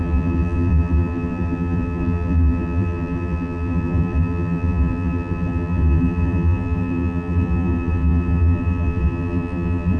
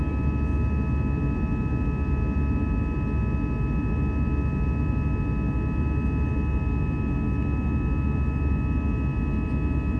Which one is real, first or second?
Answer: second